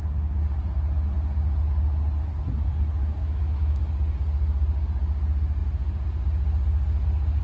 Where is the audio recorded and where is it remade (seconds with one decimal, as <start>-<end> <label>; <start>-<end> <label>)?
0.0-3.0 recorded; 3.0-3.8 remade; 3.8-7.4 recorded